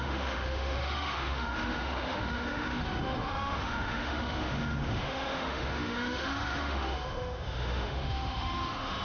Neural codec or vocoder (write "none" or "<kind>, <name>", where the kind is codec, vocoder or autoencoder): autoencoder, DAC-VAE